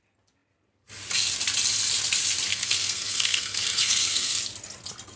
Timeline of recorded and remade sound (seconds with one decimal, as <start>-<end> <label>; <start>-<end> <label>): 0.0-2.5 recorded; 2.5-4.4 remade; 4.4-5.2 recorded